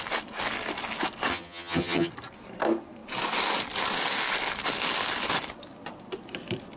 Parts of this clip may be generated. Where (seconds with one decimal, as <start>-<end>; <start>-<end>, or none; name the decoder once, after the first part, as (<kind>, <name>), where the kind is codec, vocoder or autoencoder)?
1.3-2.1 (vocoder, HiFi-GAN)